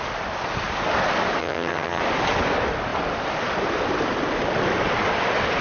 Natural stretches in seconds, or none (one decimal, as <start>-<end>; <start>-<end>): 0.0-1.4; 2.0-5.6